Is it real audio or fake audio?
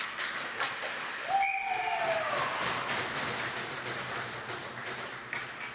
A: real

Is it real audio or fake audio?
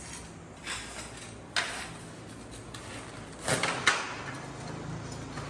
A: real